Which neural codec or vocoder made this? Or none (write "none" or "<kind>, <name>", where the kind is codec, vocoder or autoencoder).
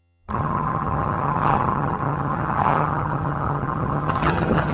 vocoder, HiFi-GAN